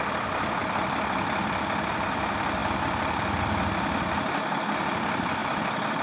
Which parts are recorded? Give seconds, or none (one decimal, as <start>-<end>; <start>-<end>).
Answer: 0.0-0.6; 1.9-2.6; 3.4-5.4